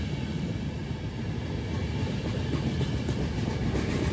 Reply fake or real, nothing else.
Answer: real